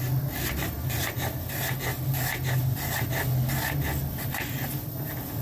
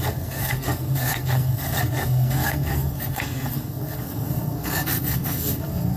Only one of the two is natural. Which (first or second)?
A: first